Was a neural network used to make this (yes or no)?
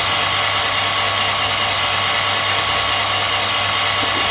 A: no